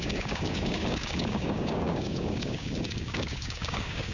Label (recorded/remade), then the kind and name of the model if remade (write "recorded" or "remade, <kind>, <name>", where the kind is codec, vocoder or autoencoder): remade, codec, DAC